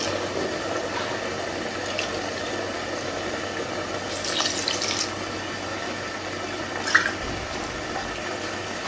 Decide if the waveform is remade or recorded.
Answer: recorded